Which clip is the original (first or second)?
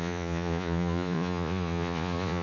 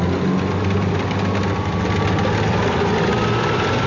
second